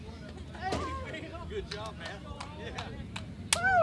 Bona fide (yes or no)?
yes